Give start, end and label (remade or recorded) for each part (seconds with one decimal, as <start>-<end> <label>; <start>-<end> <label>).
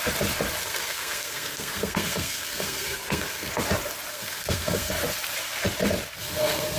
0.0-0.6 recorded; 0.6-3.5 remade; 3.5-4.1 recorded; 4.1-4.9 remade; 4.9-6.2 recorded; 6.2-6.8 remade